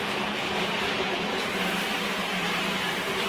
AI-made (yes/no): yes